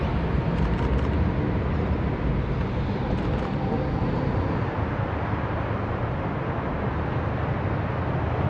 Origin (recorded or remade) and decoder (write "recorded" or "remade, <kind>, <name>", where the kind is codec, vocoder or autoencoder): recorded